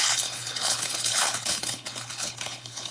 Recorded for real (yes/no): no